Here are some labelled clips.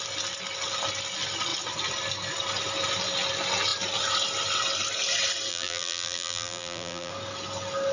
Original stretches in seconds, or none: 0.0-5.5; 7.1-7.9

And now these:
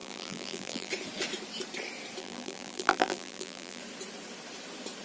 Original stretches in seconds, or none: 0.9-2.2; 3.8-5.0

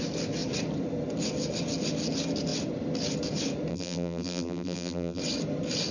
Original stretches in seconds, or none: 0.0-3.7; 5.2-5.9